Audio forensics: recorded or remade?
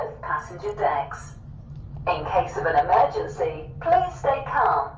recorded